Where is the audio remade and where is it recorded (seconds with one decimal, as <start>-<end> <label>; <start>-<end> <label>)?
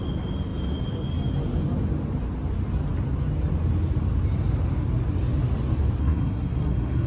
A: 0.0-6.0 recorded; 6.0-7.1 remade